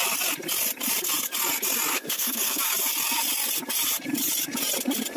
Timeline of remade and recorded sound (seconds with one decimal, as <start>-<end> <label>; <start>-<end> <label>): 0.0-1.9 recorded; 1.9-2.6 remade; 2.6-5.2 recorded